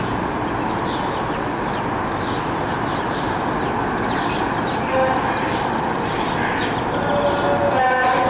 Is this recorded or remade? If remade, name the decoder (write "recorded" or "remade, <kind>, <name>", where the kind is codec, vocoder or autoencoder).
recorded